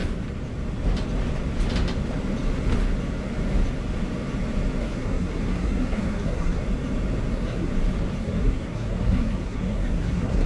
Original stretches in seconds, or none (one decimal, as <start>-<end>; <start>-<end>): 0.0-4.8; 6.6-7.3; 7.7-8.2